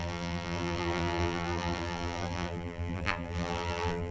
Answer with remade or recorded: remade